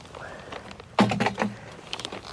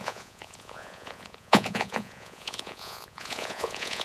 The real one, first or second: first